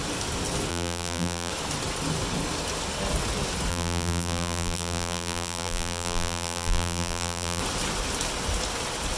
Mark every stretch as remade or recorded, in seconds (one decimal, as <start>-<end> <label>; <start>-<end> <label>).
0.0-0.7 recorded; 0.7-1.5 remade; 1.5-3.7 recorded; 3.7-7.6 remade; 7.6-9.2 recorded